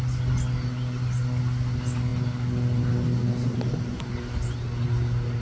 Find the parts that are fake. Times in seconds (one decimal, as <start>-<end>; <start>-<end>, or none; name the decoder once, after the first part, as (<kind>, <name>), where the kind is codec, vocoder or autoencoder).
none